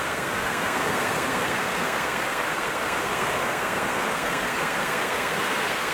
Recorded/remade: remade